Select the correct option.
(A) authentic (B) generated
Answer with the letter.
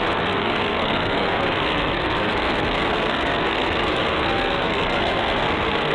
B